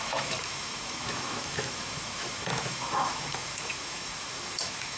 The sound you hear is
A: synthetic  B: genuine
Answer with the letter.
A